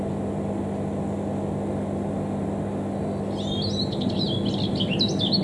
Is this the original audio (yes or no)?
yes